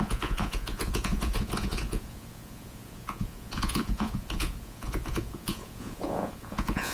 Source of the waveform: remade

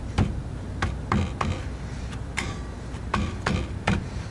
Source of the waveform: remade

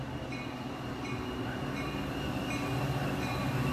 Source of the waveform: recorded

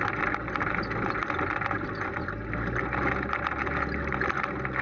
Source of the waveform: recorded